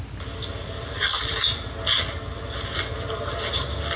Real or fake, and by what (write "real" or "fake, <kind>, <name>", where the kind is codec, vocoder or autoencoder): real